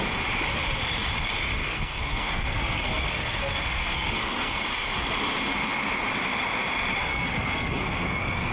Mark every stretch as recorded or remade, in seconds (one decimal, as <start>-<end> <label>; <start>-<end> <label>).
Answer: 0.0-1.6 recorded; 1.6-4.6 remade; 4.6-7.0 recorded; 7.0-8.5 remade